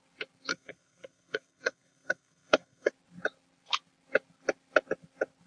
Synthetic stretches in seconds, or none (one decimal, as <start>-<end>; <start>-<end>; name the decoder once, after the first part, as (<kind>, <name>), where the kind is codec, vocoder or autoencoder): 0.5-2.9 (codec, SNAC)